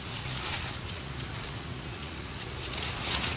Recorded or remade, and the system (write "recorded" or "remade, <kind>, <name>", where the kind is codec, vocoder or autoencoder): remade, vocoder, Vocos